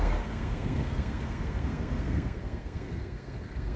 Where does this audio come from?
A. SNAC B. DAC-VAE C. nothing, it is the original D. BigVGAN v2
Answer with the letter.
A